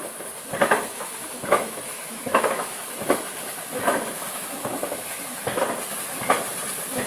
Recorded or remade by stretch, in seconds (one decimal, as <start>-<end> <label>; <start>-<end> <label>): 0.0-0.9 recorded; 0.9-5.2 remade; 5.2-7.1 recorded

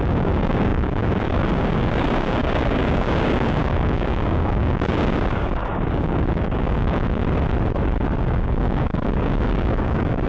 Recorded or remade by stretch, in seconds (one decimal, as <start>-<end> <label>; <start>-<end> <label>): 0.0-7.2 remade; 7.2-8.2 recorded; 8.2-10.3 remade